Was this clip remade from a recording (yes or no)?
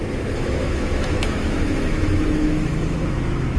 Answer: yes